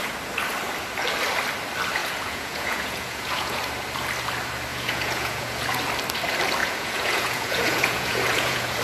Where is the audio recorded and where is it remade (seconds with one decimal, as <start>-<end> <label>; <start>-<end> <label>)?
0.0-2.0 recorded; 2.0-3.6 remade; 3.6-4.7 recorded; 4.7-5.8 remade; 5.8-6.6 recorded; 6.6-8.8 remade